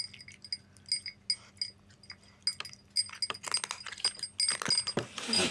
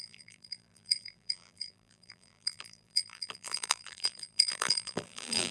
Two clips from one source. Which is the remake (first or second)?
second